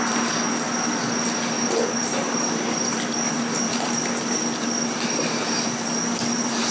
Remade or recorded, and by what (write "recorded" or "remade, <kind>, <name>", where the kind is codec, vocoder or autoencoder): recorded